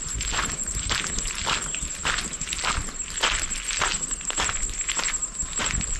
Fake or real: real